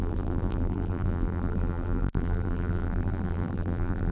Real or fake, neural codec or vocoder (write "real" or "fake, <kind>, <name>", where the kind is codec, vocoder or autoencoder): fake, vocoder, BigVGAN v2